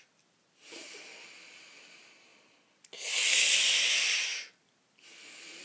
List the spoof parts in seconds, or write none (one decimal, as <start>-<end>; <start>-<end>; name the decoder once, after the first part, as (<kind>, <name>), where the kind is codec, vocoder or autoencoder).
none